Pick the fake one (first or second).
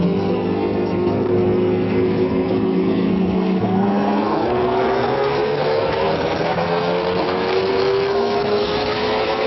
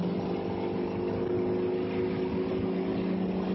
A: first